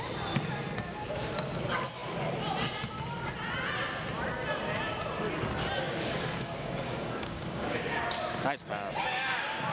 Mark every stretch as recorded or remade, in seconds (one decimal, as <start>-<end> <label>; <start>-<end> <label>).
0.0-5.8 recorded; 5.8-8.0 remade; 8.0-9.7 recorded